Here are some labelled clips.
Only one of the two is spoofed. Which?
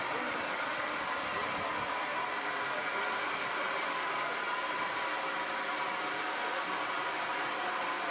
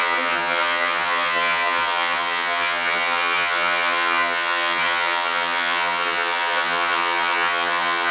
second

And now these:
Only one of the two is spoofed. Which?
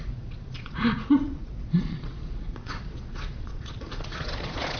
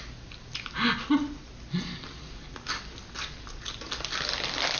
first